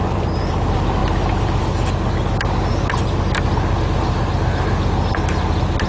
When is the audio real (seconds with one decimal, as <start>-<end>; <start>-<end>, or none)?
0.0-5.9